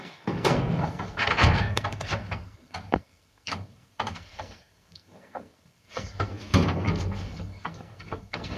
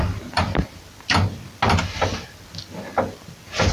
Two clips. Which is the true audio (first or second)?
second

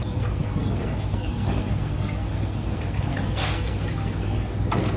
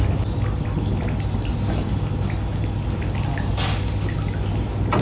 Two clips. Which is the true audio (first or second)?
second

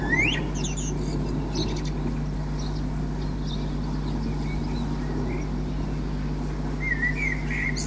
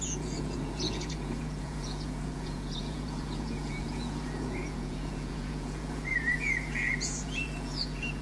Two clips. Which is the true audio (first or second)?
first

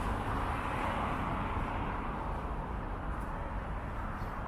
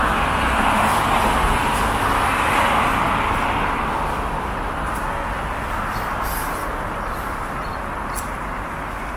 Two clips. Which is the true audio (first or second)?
second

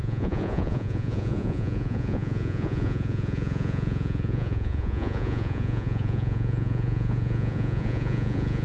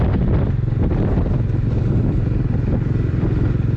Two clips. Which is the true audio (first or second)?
second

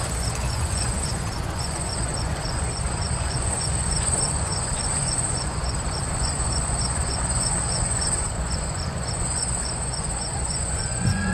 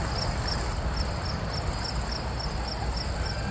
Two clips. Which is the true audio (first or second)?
second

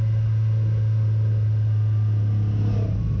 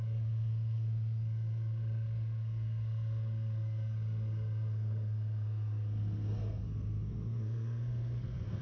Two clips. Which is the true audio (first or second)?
first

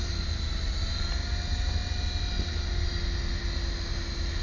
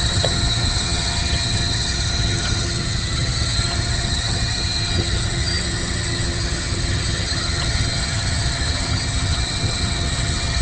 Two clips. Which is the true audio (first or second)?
first